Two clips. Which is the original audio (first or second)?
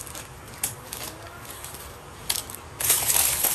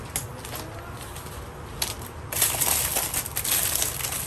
second